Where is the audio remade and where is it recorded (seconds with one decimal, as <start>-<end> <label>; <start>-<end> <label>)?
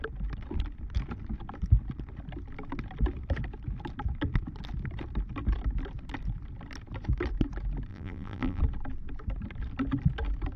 0.0-7.9 recorded; 7.9-8.6 remade; 8.6-10.6 recorded